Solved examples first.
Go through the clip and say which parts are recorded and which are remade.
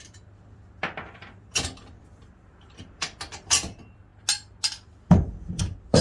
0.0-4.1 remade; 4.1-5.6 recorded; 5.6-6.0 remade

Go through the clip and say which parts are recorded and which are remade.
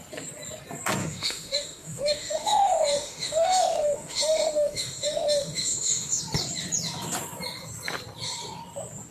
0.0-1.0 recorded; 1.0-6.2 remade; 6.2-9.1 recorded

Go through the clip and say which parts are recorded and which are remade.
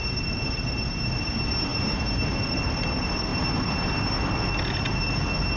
0.0-1.7 recorded; 1.7-2.4 remade; 2.4-3.3 recorded; 3.3-3.9 remade; 3.9-5.6 recorded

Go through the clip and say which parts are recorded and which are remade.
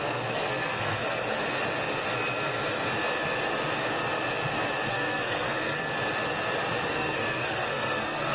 0.0-1.4 remade; 1.4-4.9 recorded; 4.9-5.9 remade; 5.9-6.9 recorded; 6.9-8.3 remade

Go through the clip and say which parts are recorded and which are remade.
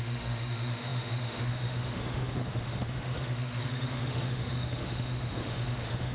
0.0-6.1 remade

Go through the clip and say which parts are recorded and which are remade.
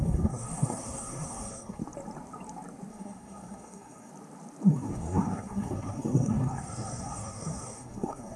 0.0-1.8 remade; 1.8-2.9 recorded; 2.9-4.1 remade; 4.1-4.7 recorded; 4.7-8.4 remade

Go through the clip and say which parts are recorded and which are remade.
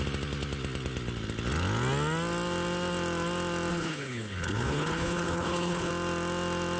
0.0-3.7 recorded; 3.7-5.9 remade; 5.9-6.8 recorded